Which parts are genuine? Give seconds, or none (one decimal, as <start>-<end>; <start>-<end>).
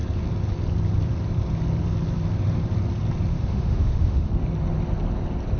0.0-3.3; 4.3-5.6